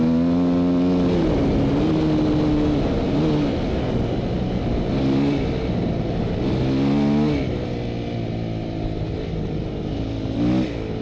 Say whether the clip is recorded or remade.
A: recorded